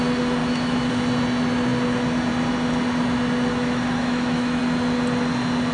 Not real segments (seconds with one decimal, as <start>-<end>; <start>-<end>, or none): 0.4-0.9; 3.5-4.6